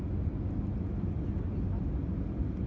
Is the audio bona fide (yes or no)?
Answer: yes